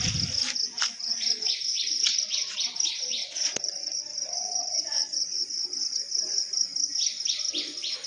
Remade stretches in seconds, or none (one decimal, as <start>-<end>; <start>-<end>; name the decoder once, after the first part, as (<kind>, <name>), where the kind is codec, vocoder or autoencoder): 1.1-5.4 (vocoder, Vocos)